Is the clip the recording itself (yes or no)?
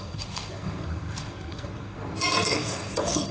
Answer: no